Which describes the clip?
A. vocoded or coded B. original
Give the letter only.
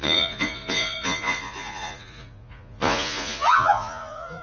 A